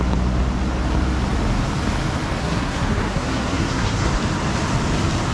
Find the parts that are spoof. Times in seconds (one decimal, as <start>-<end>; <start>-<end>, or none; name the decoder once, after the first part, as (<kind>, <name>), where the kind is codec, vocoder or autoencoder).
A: 2.4-4.1 (codec, SNAC)